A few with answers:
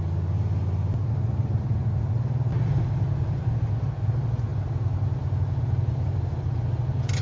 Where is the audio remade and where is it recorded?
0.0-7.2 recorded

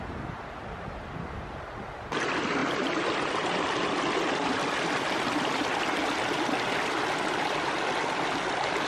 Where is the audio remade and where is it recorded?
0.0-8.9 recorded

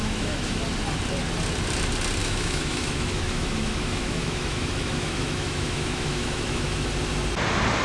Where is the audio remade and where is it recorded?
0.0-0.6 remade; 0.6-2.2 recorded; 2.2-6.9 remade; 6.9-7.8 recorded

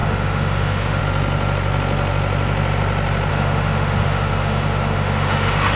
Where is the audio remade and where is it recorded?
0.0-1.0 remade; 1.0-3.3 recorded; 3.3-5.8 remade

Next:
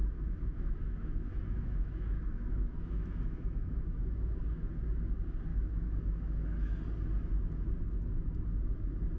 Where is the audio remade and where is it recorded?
0.0-4.4 remade; 4.4-5.5 recorded; 5.5-6.7 remade; 6.7-9.2 recorded

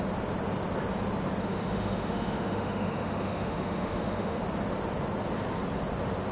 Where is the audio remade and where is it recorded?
0.0-1.4 recorded; 1.4-4.4 remade; 4.4-6.3 recorded

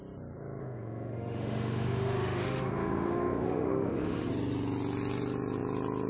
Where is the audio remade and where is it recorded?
0.0-0.6 recorded; 0.6-4.3 remade; 4.3-6.1 recorded

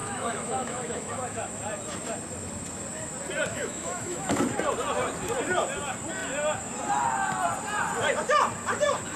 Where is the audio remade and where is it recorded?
0.0-1.5 remade; 1.5-3.5 recorded; 3.5-4.4 remade; 4.4-9.2 recorded